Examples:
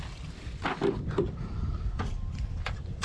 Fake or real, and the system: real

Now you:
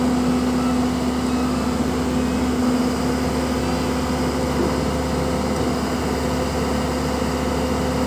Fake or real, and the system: real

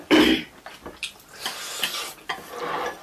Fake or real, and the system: real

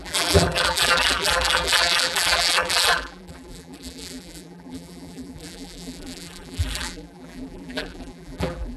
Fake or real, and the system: fake, vocoder, BigVGAN v2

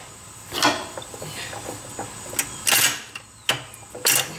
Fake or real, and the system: real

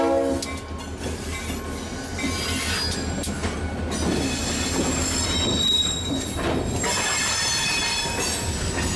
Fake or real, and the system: real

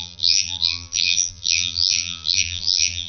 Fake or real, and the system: fake, vocoder, BigVGAN v2